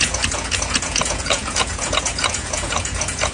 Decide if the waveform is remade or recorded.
remade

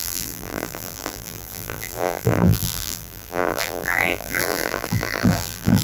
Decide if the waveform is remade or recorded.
remade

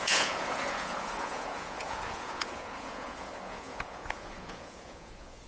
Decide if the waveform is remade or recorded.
remade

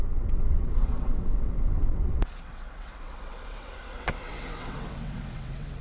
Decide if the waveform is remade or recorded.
remade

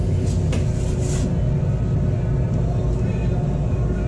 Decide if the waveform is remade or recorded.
recorded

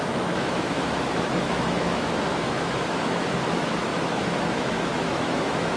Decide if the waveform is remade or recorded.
remade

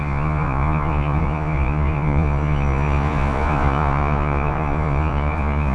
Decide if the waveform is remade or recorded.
remade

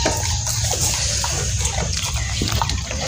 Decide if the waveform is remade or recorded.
recorded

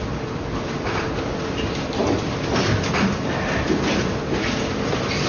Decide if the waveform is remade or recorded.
recorded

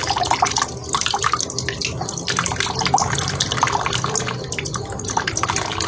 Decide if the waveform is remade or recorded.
recorded